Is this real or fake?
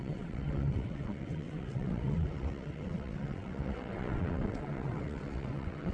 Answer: fake